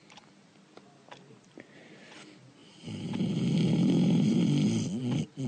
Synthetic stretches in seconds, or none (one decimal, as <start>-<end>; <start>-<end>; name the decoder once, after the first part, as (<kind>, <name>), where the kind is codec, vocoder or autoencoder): none